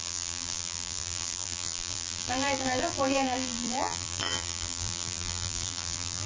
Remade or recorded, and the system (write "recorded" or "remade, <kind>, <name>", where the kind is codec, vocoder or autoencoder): remade, vocoder, BigVGAN v2